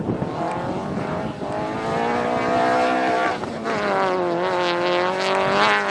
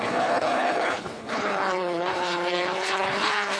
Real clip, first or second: first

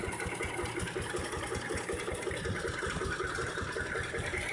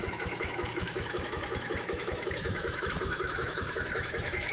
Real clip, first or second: first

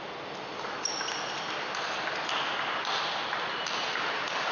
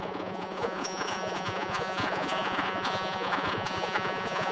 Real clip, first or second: first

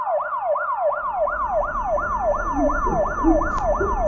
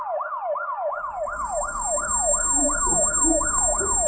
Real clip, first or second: first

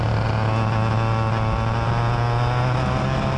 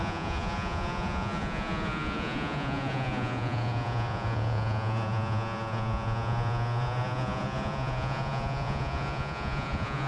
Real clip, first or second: first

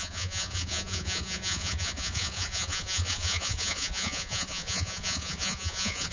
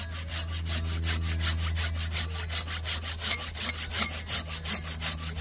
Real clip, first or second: second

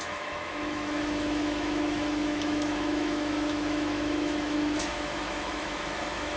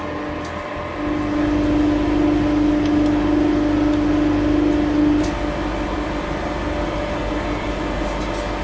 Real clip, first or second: second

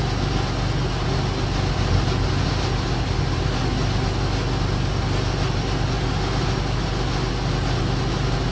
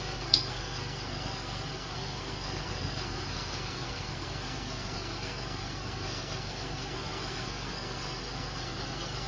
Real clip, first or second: first